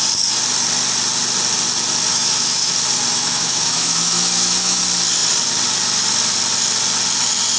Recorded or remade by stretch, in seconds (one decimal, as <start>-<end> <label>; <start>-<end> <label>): 0.0-2.1 recorded; 2.1-2.7 remade; 2.7-3.1 recorded; 3.1-4.8 remade; 4.8-7.6 recorded